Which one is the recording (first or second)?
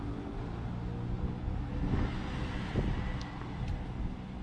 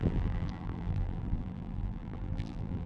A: first